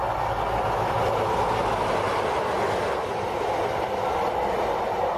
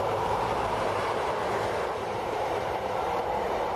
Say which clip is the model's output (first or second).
second